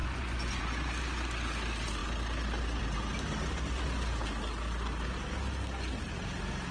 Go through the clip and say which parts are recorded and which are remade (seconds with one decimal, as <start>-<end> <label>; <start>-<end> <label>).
0.0-0.6 remade; 0.6-6.7 recorded